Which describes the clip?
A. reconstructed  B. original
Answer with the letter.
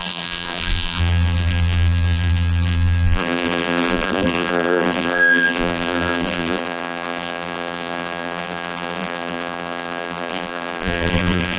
A